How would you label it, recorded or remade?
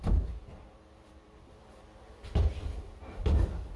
remade